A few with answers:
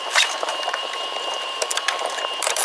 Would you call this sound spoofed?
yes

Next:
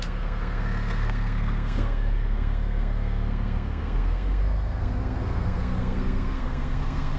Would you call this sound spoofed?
yes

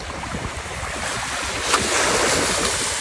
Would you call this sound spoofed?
no